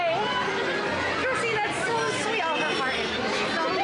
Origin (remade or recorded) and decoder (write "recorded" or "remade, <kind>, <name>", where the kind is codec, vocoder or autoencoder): recorded